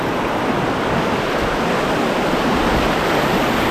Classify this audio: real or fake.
real